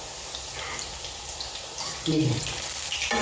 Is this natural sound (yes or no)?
yes